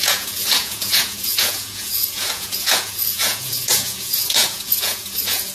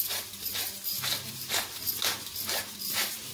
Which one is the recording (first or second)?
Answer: second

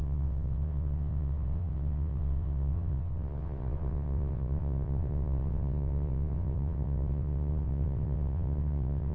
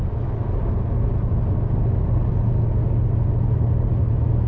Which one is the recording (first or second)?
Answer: second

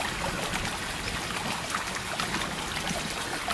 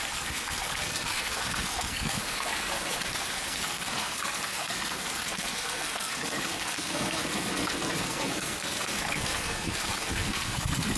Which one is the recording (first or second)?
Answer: first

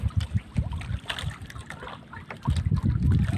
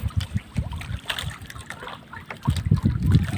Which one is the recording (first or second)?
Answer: first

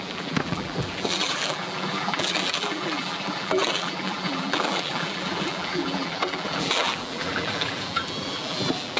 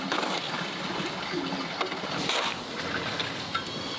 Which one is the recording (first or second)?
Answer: second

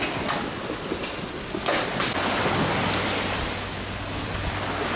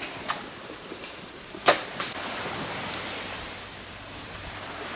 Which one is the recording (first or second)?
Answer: first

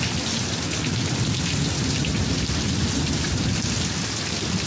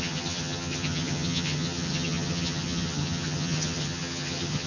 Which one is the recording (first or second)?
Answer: first